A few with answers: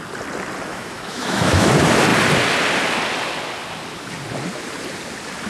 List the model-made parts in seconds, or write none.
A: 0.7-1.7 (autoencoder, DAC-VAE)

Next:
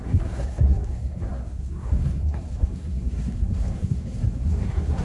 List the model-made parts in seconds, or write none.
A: 0.0-5.0 (codec, SNAC)

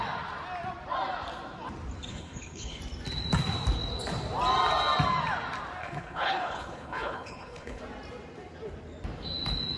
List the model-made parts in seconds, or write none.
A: 2.1-2.8 (codec, HILCodec); 5.8-7.8

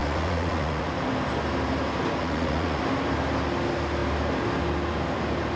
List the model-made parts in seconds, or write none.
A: 0.0-0.9 (vocoder, Vocos); 2.2-2.8

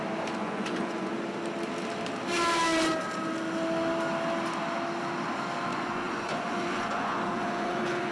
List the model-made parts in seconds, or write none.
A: 0.4-1.1 (vocoder, Vocos); 5.7-8.1

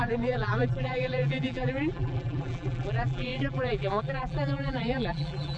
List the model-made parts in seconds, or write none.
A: 0.0-5.6 (vocoder, BigVGAN v2)

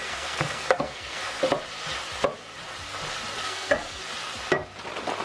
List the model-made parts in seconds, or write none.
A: 0.0-1.4 (codec, SNAC); 3.4-4.0

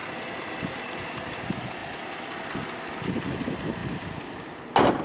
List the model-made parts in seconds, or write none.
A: none